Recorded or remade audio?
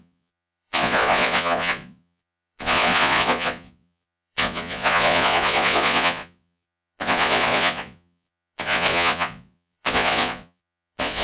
remade